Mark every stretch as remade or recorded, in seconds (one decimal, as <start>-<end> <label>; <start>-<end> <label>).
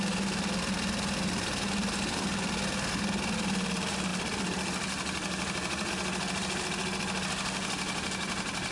0.0-4.1 recorded; 4.1-5.9 remade; 5.9-8.7 recorded